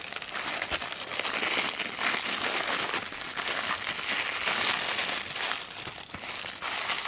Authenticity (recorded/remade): recorded